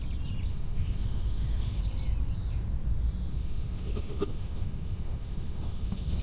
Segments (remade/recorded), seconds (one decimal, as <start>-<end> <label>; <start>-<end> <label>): 0.0-0.5 recorded; 0.5-1.8 remade; 1.8-3.3 recorded; 3.3-6.2 remade